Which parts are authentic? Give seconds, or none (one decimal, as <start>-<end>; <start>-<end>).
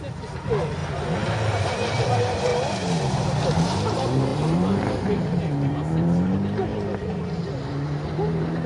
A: 0.8-1.9; 2.5-3.5; 6.7-7.7